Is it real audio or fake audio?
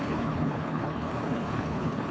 fake